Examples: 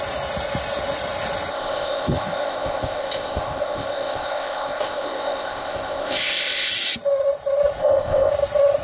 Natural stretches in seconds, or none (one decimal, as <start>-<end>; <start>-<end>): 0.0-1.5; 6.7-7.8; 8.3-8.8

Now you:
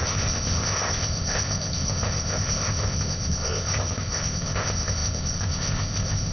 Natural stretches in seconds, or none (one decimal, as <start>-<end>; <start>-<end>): none

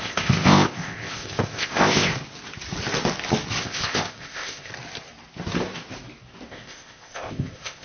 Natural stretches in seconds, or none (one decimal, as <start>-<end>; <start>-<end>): 2.1-3.6; 4.7-6.5